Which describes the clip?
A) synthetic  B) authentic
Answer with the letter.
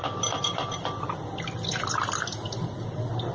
B